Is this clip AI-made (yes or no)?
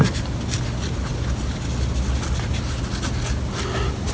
no